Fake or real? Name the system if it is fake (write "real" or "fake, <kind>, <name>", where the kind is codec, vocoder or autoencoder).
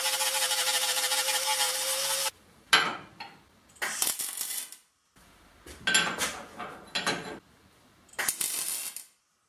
real